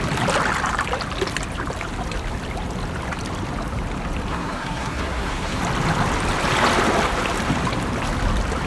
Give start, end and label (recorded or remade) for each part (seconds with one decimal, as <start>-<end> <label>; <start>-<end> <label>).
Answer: 0.0-4.3 recorded; 4.3-5.6 remade; 5.6-8.7 recorded